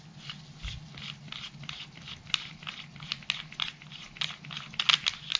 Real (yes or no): yes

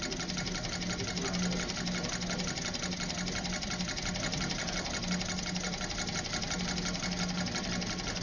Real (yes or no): yes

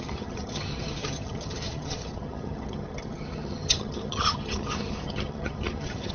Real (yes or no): no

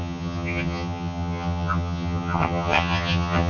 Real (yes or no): no